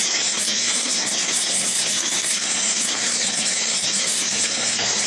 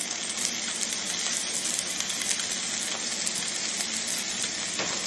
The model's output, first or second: first